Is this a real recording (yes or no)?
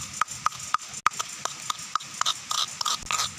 yes